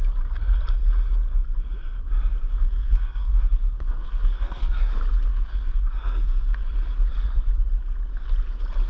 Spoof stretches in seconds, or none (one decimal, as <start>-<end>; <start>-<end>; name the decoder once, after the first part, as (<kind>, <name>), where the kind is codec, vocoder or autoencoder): 2.5-4.8 (codec, SNAC); 5.3-6.6